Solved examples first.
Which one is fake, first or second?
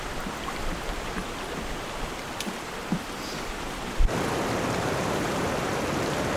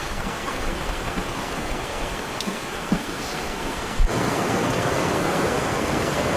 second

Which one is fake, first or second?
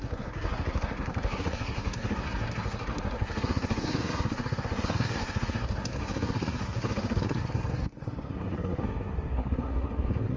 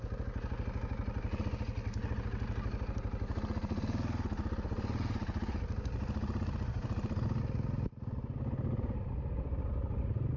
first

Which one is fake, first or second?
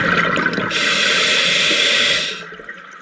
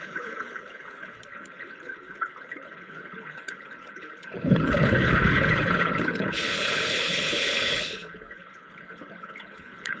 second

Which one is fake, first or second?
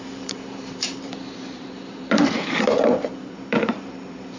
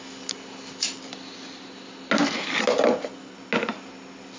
first